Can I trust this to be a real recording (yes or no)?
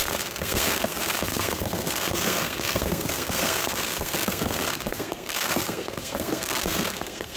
no